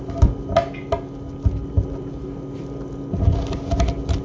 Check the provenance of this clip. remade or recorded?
recorded